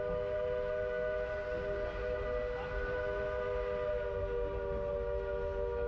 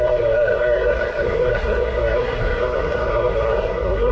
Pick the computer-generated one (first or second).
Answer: second